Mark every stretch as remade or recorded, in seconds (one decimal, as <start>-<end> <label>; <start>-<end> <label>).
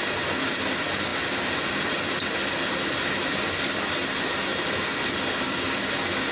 0.0-6.3 recorded